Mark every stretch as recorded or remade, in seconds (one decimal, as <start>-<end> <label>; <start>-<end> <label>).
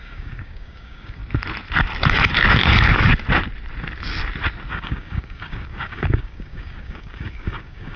0.0-1.2 remade; 1.2-4.7 recorded; 4.7-8.0 remade